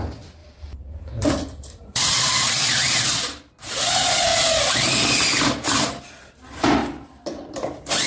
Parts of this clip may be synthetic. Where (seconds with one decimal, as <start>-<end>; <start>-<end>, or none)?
0.4-2.5; 4.3-6.0